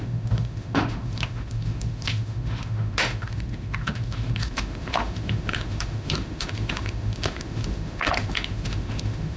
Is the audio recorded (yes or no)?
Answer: no